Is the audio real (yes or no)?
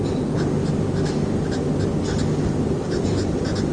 yes